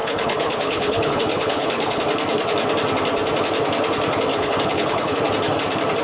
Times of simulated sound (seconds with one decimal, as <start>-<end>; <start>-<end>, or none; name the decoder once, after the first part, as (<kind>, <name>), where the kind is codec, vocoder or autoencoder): 0.0-2.0 (codec, HILCodec); 4.3-5.2